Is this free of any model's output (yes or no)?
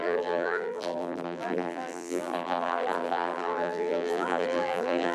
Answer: no